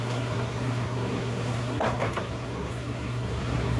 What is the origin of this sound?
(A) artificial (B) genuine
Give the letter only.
A